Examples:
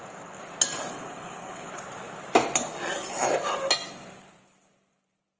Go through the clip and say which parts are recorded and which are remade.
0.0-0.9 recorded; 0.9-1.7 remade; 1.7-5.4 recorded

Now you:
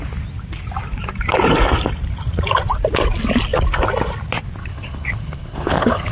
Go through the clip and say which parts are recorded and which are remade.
0.0-4.6 recorded; 4.6-6.1 remade

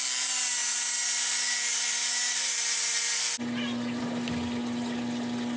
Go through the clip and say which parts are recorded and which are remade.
0.0-5.6 recorded

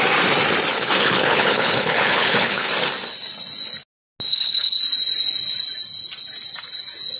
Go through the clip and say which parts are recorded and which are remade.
0.0-0.7 recorded; 0.7-2.7 remade; 2.7-4.3 recorded; 4.3-4.8 remade; 4.8-7.2 recorded

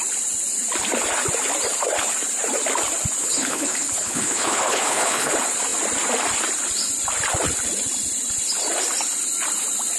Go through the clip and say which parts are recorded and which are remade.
0.0-3.2 recorded; 3.2-5.3 remade; 5.3-10.0 recorded

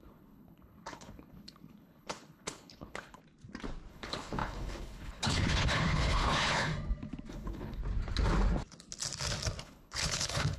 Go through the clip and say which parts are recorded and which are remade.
0.0-3.2 remade; 3.2-3.9 recorded; 3.9-6.7 remade; 6.7-7.3 recorded; 7.3-7.8 remade; 7.8-9.6 recorded; 9.6-10.6 remade

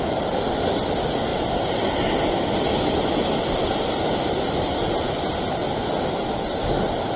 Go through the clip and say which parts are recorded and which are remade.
0.0-7.2 recorded

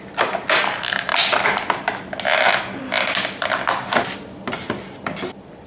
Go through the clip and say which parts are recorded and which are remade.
0.0-5.7 recorded